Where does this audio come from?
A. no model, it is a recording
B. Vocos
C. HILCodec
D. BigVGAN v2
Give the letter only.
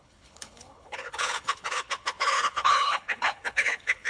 C